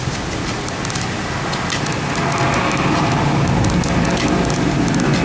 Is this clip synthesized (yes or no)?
no